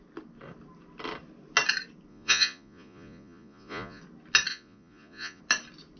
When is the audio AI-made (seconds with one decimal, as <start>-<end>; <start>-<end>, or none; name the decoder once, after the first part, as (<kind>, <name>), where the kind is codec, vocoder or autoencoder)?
2.1-4.0 (vocoder, Vocos); 4.5-5.4